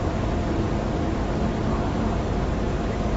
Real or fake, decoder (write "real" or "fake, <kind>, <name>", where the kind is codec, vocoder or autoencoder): real